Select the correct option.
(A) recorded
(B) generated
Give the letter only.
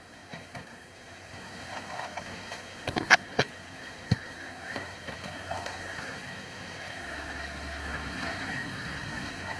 B